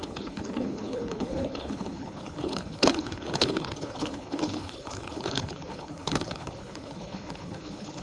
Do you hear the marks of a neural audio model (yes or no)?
yes